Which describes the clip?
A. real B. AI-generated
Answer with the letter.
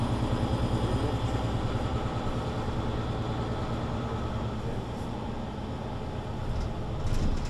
A